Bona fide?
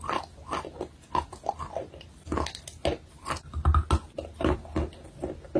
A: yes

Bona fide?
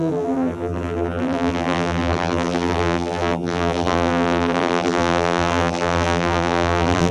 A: no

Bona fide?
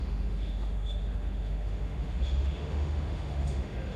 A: no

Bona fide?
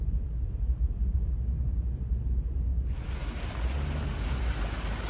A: yes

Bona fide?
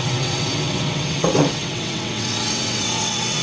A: no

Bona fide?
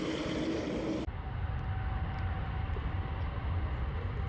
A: yes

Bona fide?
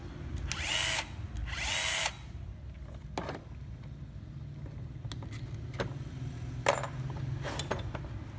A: yes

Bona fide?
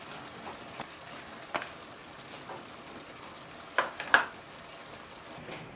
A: yes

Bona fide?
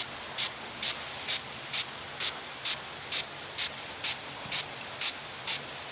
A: yes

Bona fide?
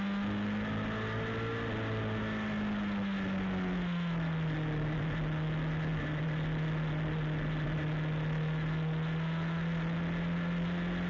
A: yes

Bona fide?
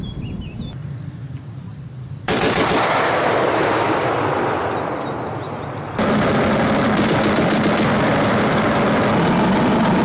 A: yes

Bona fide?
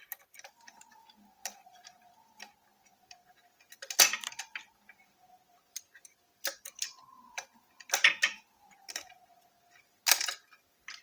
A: yes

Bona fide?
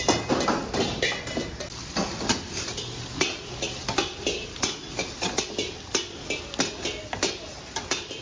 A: yes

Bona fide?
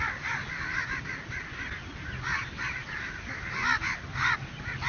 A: yes